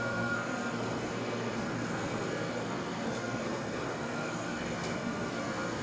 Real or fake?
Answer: fake